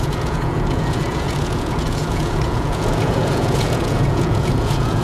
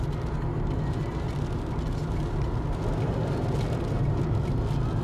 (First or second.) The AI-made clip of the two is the first